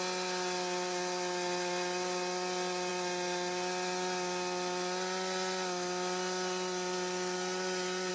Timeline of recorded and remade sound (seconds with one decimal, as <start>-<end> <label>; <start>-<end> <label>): 0.0-8.1 recorded